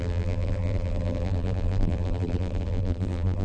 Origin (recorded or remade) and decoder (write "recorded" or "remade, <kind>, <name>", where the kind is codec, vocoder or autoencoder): remade, vocoder, BigVGAN v2